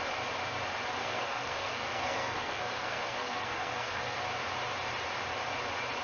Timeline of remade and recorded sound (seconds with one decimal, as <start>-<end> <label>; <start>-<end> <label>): 0.0-1.0 recorded; 1.0-4.2 remade; 4.2-6.0 recorded